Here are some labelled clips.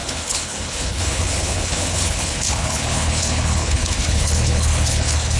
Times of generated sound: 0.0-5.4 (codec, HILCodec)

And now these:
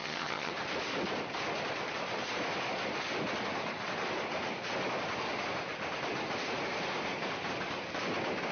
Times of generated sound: 0.0-0.5 (vocoder, HiFi-GAN)